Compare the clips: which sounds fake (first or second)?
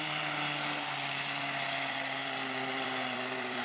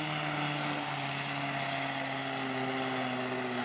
first